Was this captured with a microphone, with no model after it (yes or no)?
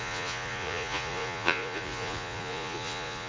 no